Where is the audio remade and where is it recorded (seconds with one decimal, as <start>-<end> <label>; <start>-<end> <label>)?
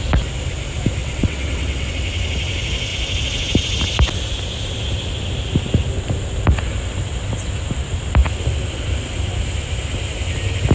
0.0-1.0 recorded; 1.0-1.9 remade; 1.9-10.7 recorded